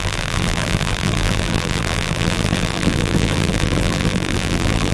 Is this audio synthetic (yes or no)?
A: yes